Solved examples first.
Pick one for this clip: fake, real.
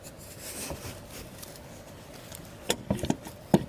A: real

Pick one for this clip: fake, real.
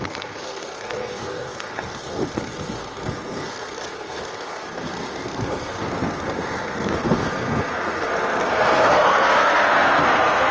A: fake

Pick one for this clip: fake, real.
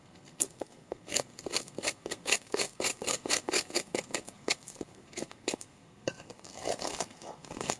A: fake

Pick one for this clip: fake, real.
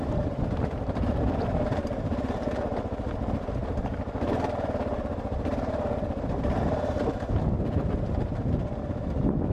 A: real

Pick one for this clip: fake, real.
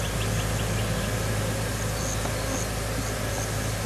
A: real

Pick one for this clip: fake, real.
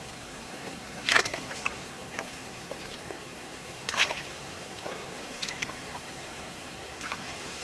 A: fake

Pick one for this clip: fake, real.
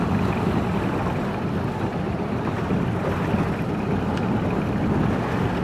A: real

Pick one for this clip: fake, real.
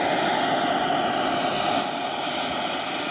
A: real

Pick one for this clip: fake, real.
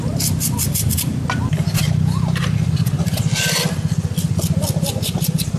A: real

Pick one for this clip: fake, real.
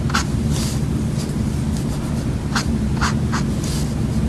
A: real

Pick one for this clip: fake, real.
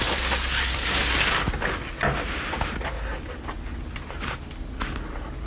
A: real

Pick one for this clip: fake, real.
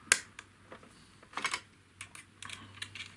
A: real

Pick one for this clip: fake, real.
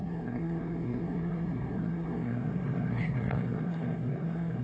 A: fake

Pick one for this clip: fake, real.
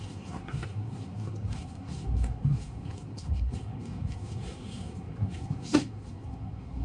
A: fake